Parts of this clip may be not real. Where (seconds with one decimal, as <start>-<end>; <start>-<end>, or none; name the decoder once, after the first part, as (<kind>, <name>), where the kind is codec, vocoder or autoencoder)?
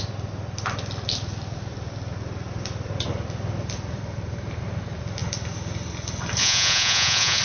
6.4-7.4 (vocoder, Vocos)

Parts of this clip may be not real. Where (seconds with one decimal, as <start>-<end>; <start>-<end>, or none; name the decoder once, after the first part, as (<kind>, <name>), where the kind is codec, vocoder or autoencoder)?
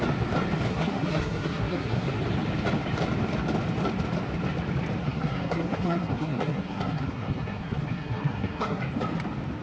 0.7-2.2 (codec, SNAC); 5.0-8.8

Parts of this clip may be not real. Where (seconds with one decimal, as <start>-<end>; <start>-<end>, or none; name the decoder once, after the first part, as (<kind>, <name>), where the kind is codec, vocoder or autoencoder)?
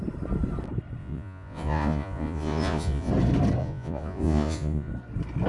1.0-3.1 (vocoder, Vocos); 3.6-4.9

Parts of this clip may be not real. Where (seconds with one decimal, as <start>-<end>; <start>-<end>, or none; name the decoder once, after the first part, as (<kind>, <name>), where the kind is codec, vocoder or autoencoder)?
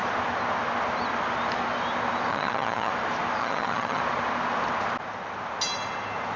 2.3-2.9 (vocoder, HiFi-GAN); 3.4-4.0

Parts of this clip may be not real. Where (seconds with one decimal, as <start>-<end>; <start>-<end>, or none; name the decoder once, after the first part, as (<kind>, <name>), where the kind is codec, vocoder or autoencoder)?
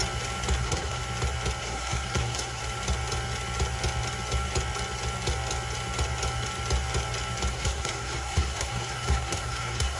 0.6-1.0 (codec, SNAC); 1.6-2.6; 7.5-10.0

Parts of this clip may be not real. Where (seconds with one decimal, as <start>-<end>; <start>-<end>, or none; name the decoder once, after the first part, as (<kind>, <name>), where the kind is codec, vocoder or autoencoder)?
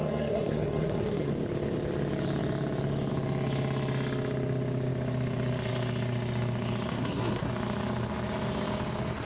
0.0-1.3 (codec, SNAC); 6.9-7.5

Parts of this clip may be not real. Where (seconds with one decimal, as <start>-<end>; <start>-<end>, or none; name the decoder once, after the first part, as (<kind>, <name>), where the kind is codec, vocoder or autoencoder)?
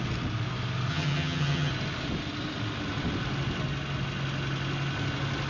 0.9-1.7 (vocoder, HiFi-GAN)